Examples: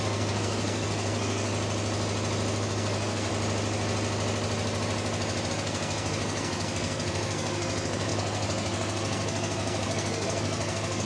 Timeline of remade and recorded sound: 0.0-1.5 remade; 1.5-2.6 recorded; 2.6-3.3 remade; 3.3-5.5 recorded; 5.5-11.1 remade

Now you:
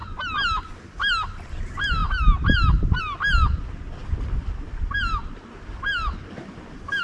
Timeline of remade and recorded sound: 0.0-7.0 recorded